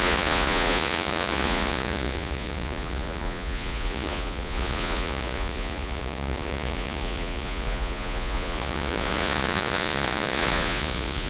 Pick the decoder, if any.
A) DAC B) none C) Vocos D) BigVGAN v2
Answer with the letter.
C